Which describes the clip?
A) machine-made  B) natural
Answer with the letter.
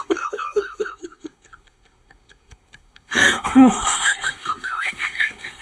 A